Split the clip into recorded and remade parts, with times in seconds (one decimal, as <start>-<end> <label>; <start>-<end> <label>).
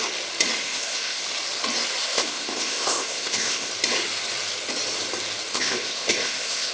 0.0-0.6 recorded; 0.6-1.2 remade; 1.2-2.0 recorded; 2.0-3.7 remade; 3.7-5.5 recorded; 5.5-6.7 remade